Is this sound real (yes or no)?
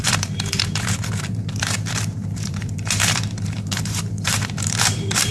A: no